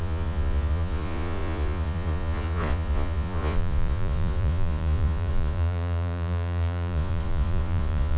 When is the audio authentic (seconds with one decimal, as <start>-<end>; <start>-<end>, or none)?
none